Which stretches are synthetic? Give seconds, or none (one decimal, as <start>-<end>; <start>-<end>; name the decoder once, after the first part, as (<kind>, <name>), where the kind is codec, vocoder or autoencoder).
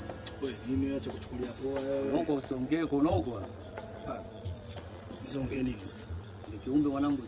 2.1-6.5 (vocoder, Vocos)